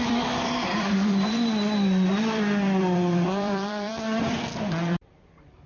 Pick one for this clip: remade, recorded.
remade